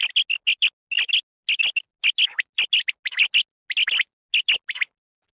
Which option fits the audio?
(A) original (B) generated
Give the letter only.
A